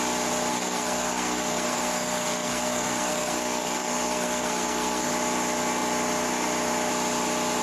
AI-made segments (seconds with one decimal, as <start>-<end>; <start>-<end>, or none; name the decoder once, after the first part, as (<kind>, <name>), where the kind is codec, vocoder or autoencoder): 0.5-5.1 (codec, SNAC)